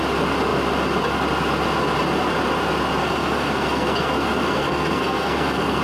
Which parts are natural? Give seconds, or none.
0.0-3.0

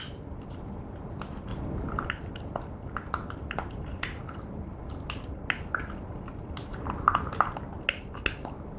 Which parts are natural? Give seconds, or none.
0.0-8.8

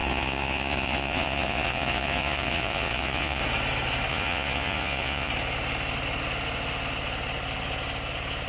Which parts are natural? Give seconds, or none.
3.4-4.1; 5.3-8.5

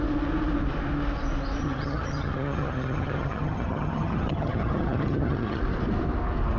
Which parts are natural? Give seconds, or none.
0.0-1.6; 5.6-6.6

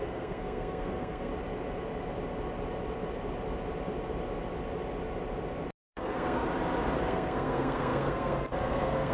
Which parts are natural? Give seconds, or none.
1.3-5.8; 6.4-7.0

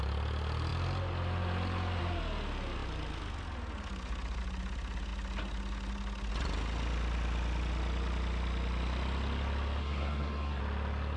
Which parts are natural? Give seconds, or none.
0.0-9.8; 10.6-11.2